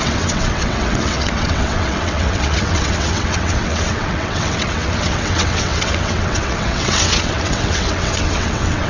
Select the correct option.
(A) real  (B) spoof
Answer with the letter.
B